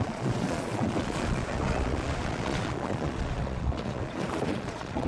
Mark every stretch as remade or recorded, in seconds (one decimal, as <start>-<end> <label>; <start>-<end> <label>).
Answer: 0.0-5.1 remade